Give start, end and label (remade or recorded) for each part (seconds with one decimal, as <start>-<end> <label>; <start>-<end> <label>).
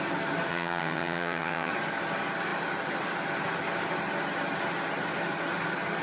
0.0-0.5 recorded; 0.5-1.7 remade; 1.7-6.0 recorded